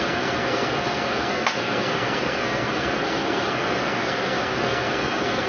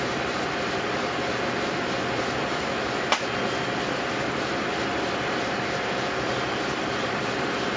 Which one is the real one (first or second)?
second